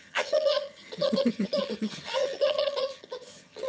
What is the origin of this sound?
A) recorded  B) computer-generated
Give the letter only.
B